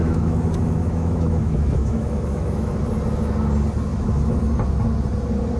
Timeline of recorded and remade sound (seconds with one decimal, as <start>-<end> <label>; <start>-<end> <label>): 0.0-2.8 remade; 2.8-3.9 recorded; 3.9-4.4 remade; 4.4-5.6 recorded